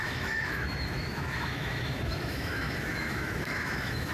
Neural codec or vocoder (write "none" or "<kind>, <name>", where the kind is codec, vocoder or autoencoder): autoencoder, DAC-VAE